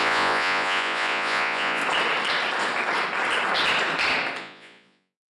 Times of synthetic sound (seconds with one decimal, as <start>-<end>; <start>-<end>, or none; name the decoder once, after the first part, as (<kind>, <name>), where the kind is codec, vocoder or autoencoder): 0.0-1.8 (vocoder, Vocos); 4.4-5.3